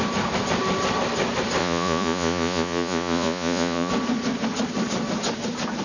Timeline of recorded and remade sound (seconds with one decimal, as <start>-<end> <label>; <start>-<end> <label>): 0.0-1.6 recorded; 1.6-3.9 remade; 3.9-5.8 recorded